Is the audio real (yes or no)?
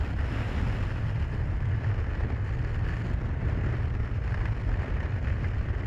yes